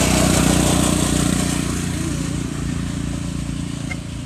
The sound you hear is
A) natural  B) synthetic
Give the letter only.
A